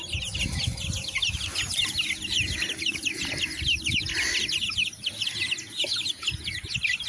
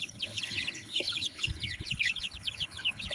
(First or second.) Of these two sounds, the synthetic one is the second